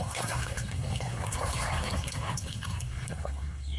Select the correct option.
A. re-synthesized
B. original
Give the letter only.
A